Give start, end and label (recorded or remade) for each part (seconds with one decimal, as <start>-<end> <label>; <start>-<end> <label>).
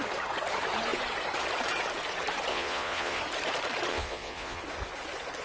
0.0-2.5 recorded; 2.5-3.2 remade; 3.2-3.9 recorded; 3.9-4.6 remade; 4.6-5.4 recorded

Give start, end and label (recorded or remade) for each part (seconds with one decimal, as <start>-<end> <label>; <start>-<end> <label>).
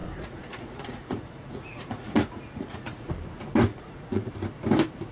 0.0-3.1 remade; 3.1-3.7 recorded; 3.7-4.3 remade; 4.3-5.1 recorded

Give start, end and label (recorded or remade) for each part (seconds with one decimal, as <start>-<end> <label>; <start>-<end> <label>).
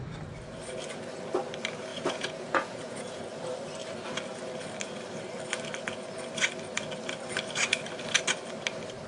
0.0-1.9 recorded; 1.9-3.2 remade; 3.2-9.1 recorded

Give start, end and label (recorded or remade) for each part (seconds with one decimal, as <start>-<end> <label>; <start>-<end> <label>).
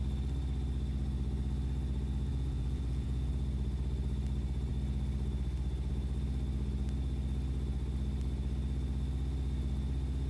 0.0-2.3 recorded; 2.3-3.3 remade; 3.3-10.3 recorded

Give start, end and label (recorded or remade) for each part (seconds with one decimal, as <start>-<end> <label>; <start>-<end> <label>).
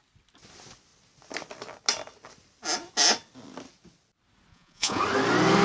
0.0-4.5 recorded; 4.5-5.0 remade; 5.0-5.6 recorded